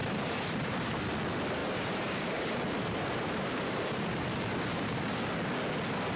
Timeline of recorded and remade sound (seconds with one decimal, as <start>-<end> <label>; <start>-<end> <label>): 0.0-1.1 remade; 1.1-1.6 recorded; 1.6-5.3 remade; 5.3-6.2 recorded